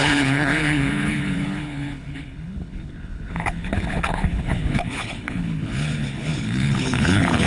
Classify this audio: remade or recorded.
remade